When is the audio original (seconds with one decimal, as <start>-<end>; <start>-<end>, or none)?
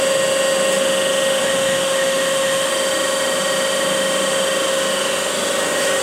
0.0-1.4; 2.7-6.0